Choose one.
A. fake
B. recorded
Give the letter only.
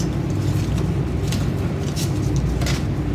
B